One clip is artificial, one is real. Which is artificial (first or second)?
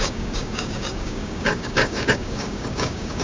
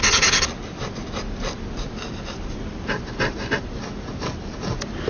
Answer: first